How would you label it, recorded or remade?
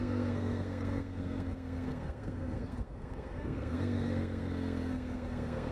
remade